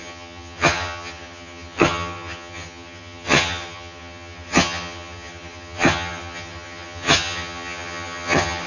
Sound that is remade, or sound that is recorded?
remade